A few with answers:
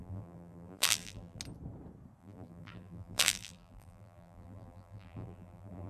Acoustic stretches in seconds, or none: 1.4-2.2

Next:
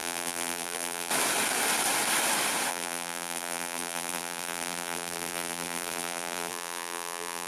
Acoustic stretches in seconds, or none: 1.1-2.7

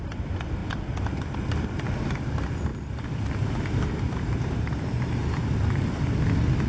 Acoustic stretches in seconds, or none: 0.0-2.7; 6.1-6.7

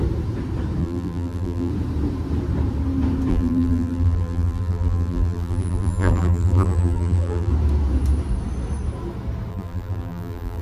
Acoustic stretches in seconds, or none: 0.0-0.8; 1.7-3.3; 7.5-9.5

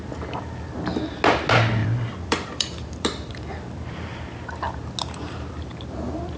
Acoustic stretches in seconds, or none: 0.0-1.8; 3.3-6.4

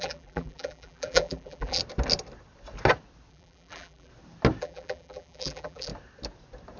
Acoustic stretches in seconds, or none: 1.8-3.3; 4.1-4.6; 5.9-6.8